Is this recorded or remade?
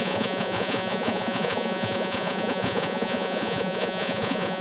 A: remade